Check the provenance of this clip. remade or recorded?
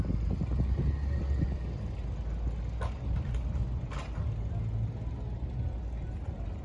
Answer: recorded